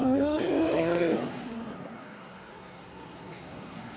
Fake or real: fake